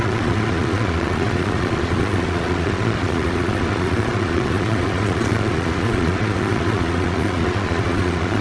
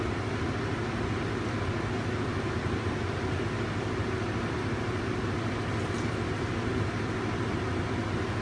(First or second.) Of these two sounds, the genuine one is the second